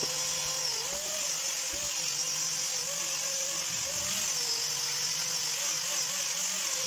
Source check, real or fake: real